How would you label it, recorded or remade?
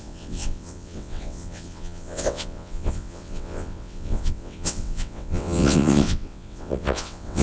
remade